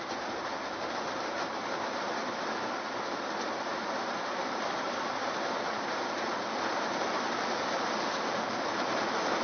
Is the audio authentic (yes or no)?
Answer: no